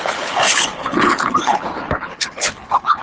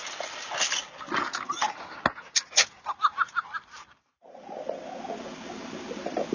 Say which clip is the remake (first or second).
first